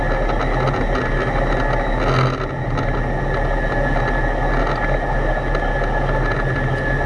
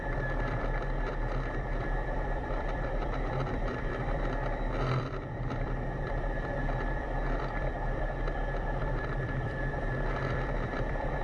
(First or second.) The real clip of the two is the first